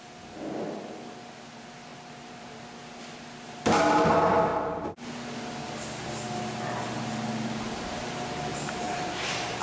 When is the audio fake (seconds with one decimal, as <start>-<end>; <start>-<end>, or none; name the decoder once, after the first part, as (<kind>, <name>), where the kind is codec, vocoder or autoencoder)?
1.9-2.6 (vocoder, BigVGAN v2); 4.5-5.1; 8.5-9.6